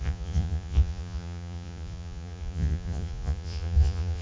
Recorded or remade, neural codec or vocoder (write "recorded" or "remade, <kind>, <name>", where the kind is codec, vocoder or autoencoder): remade, vocoder, Vocos